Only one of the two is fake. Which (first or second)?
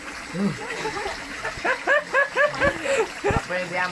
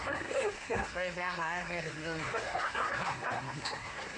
second